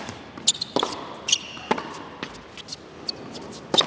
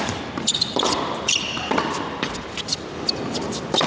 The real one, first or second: first